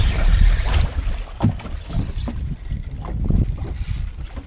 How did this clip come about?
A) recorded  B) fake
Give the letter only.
A